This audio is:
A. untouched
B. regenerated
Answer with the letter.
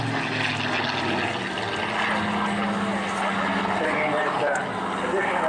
A